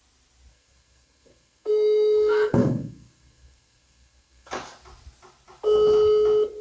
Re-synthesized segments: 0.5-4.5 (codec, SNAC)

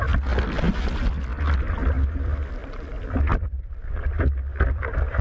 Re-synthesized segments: none

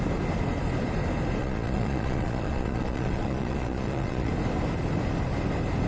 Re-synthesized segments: 1.4-4.3 (vocoder, Vocos)

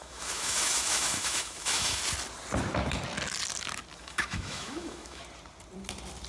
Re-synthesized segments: 0.0-2.0 (autoencoder, DAC-VAE); 4.0-5.2

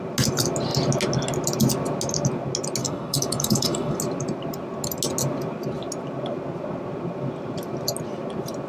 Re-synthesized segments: 2.8-4.0 (codec, DAC)